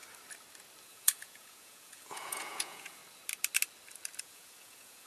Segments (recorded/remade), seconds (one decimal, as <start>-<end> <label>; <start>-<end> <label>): 0.0-0.8 recorded; 0.8-3.0 remade; 3.0-4.2 recorded; 4.2-5.1 remade